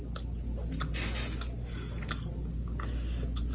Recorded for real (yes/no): yes